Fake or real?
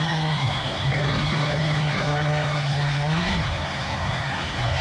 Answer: fake